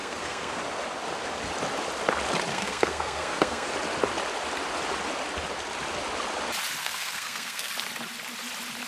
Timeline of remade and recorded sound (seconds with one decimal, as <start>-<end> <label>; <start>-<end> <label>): 0.0-0.6 remade; 0.6-2.5 recorded; 2.5-3.7 remade; 3.7-6.8 recorded; 6.8-7.7 remade; 7.7-8.9 recorded